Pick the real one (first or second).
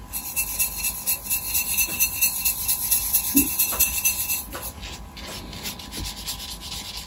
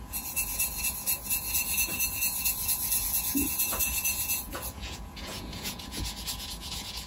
first